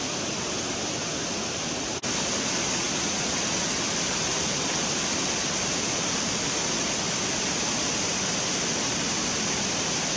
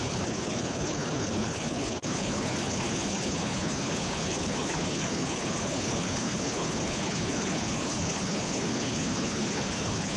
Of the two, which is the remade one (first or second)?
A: second